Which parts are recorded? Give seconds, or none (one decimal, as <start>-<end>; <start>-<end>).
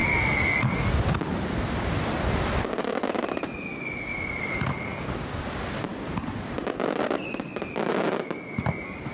0.0-9.1